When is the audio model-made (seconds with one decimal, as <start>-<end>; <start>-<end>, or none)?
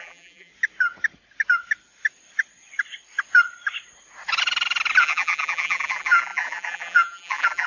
0.0-0.5; 5.0-7.7